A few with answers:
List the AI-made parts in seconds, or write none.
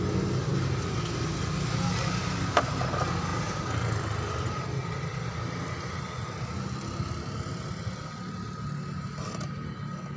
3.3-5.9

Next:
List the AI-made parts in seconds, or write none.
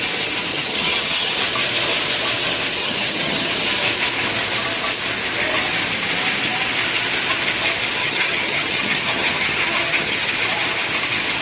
0.5-1.4; 2.8-3.5; 8.0-10.3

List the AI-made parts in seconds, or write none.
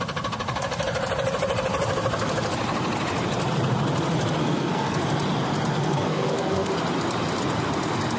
4.4-5.0; 5.7-6.7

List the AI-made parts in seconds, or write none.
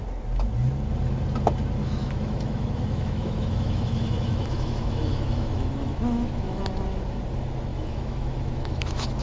1.8-6.6; 7.7-9.2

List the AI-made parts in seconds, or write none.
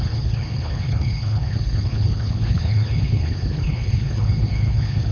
0.0-5.1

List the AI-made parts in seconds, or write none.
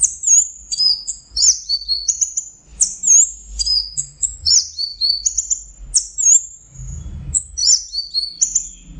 none